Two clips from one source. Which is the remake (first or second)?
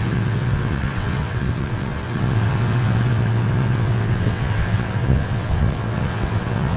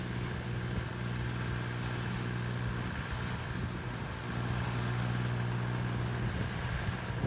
first